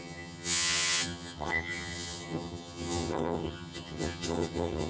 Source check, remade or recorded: remade